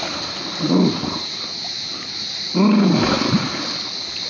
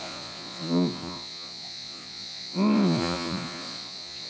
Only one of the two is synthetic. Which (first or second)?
second